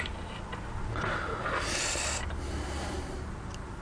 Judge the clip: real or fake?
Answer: real